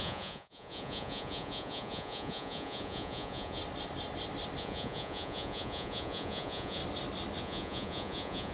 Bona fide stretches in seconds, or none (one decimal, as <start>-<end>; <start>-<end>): 3.6-4.6; 6.8-7.4

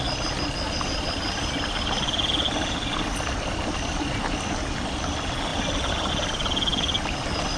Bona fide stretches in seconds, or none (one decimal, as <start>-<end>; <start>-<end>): 0.0-7.6

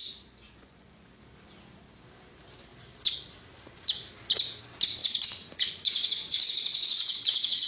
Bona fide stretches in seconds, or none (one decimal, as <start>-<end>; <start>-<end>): 1.2-5.0

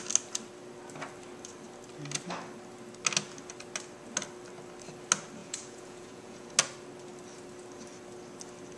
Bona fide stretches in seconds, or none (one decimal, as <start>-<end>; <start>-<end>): 0.0-5.4; 6.5-8.8

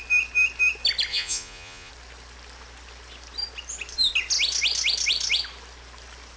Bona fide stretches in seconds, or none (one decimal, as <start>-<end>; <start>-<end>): 0.0-1.1; 1.9-6.4

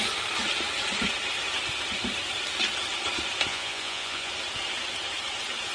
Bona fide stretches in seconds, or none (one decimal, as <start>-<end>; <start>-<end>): 0.0-3.5; 4.3-5.7

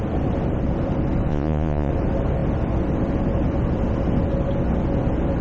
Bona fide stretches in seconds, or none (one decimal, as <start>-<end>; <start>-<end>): 0.0-1.3; 1.9-5.4